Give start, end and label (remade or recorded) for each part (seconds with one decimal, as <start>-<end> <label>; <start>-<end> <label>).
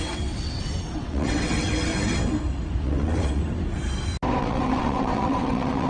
0.0-1.9 remade; 1.9-2.8 recorded; 2.8-3.4 remade; 3.4-4.4 recorded; 4.4-5.9 remade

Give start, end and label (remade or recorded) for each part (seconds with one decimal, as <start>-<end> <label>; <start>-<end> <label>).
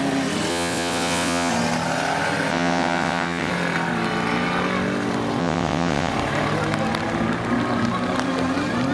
0.0-0.5 recorded; 0.5-1.5 remade; 1.5-2.5 recorded; 2.5-3.5 remade; 3.5-5.4 recorded; 5.4-6.1 remade; 6.1-8.9 recorded